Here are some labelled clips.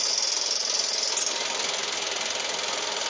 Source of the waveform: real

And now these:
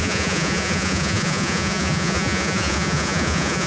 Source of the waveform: fake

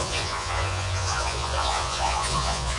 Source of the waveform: fake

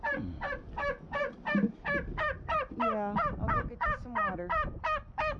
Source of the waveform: real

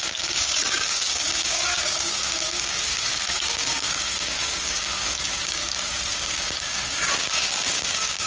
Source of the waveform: fake